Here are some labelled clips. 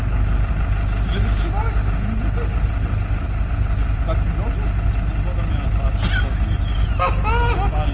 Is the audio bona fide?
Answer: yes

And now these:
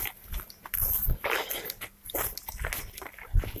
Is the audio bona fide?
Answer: yes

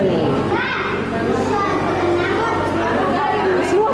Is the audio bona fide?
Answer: yes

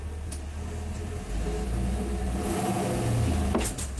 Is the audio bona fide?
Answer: yes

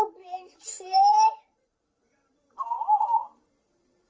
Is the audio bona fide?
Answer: no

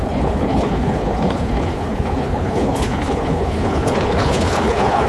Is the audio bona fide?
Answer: no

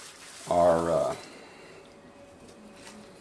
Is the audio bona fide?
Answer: yes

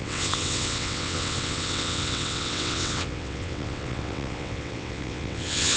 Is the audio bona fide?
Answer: no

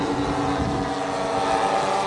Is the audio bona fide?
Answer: yes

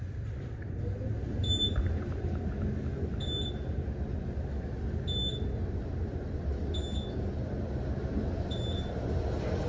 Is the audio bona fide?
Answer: yes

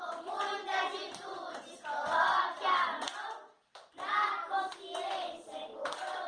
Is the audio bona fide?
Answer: yes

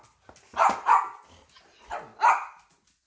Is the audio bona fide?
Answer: yes